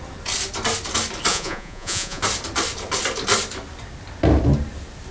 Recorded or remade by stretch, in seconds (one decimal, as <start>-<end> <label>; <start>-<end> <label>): 0.0-1.3 recorded; 1.3-2.2 remade; 2.2-5.1 recorded

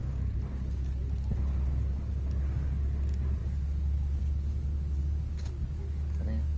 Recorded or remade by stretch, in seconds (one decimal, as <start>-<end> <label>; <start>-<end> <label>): 0.0-5.0 recorded; 5.0-6.6 remade